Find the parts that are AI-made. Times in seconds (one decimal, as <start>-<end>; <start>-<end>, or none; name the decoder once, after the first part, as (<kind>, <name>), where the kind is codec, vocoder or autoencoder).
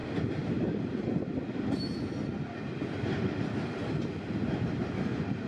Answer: none